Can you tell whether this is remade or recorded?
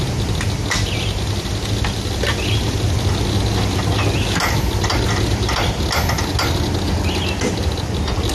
recorded